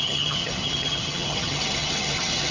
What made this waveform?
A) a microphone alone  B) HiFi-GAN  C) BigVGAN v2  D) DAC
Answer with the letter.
B